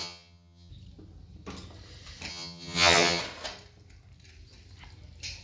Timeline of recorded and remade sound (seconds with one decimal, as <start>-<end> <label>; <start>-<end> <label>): 0.0-0.7 remade; 0.7-2.3 recorded; 2.3-3.2 remade; 3.2-5.4 recorded